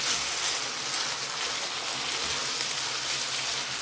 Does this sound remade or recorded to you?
recorded